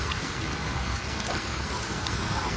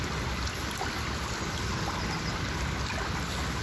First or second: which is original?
second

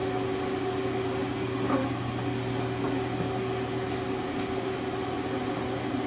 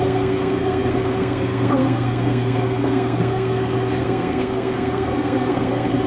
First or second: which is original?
first